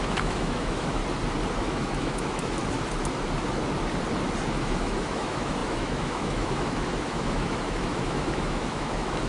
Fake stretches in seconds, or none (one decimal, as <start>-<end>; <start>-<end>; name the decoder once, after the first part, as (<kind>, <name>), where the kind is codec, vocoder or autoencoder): 0.0-1.0 (autoencoder, DAC-VAE); 1.6-2.6; 4.5-9.3

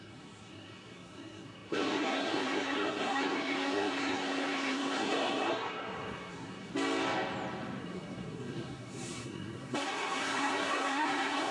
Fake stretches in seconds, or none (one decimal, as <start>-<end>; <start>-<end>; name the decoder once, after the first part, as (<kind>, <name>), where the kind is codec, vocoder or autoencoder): 0.0-6.7 (codec, SNAC); 7.8-11.5

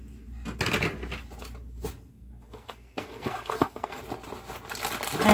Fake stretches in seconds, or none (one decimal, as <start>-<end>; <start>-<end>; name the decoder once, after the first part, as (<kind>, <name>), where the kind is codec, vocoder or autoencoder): 2.1-4.0 (codec, SNAC)

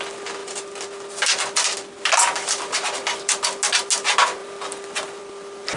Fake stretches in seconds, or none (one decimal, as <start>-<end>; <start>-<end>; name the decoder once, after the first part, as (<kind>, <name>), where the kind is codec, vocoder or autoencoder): 4.4-5.2 (vocoder, BigVGAN v2)

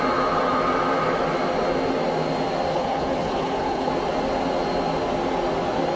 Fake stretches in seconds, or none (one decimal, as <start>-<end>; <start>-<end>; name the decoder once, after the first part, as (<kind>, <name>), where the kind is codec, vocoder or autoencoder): 2.7-3.9 (codec, HILCodec)

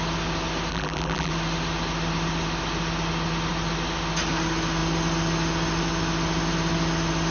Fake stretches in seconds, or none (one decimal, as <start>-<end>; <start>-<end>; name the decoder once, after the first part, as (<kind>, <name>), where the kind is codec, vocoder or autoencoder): 0.7-1.3 (vocoder, BigVGAN v2)